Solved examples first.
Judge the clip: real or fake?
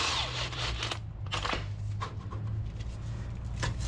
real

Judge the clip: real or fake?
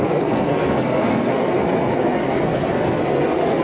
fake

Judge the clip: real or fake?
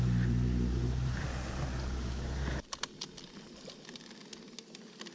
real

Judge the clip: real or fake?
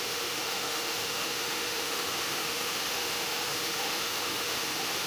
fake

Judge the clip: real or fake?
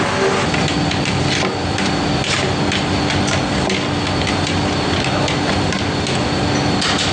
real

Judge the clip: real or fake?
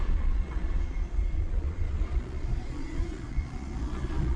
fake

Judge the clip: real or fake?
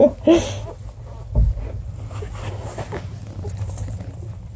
real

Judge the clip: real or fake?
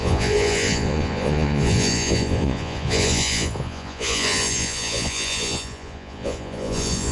fake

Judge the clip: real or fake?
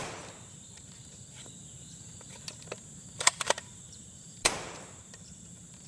fake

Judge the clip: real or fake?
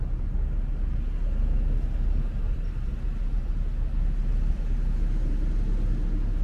real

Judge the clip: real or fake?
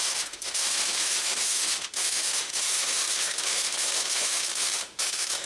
fake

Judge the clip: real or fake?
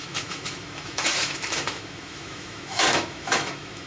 fake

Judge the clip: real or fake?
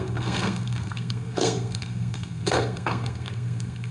fake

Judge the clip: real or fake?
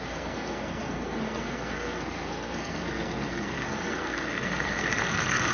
fake